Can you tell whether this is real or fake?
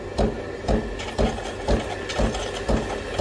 real